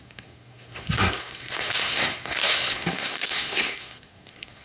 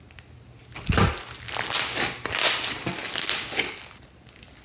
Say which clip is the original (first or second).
second